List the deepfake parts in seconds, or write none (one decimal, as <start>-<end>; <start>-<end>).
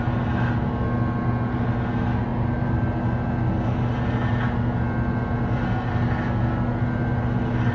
none